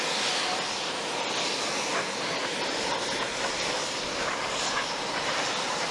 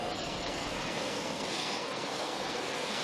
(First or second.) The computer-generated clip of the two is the second